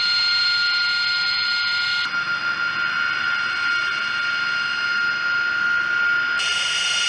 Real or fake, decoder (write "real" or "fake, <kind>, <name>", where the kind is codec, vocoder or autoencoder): real